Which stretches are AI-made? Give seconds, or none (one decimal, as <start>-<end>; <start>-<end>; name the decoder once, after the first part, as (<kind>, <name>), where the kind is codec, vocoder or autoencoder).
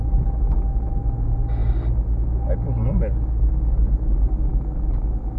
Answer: 4.5-5.4 (autoencoder, DAC-VAE)